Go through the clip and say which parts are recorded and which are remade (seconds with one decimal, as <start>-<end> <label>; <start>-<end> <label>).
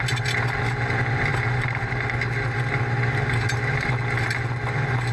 0.0-5.1 recorded